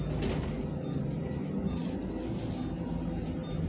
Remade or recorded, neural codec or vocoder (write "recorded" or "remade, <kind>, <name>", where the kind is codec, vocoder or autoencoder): recorded